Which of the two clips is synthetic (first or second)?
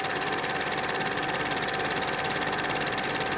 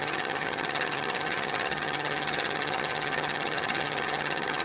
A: second